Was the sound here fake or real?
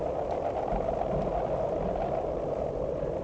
real